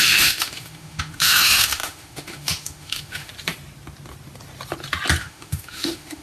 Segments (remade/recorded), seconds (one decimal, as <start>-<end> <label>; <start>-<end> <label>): 0.0-3.3 remade; 3.3-5.2 recorded; 5.2-6.2 remade